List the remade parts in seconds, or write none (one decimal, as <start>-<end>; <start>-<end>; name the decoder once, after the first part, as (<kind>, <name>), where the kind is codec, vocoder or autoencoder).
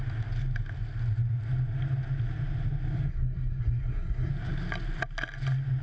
3.1-4.3 (codec, SNAC)